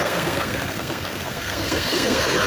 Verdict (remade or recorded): remade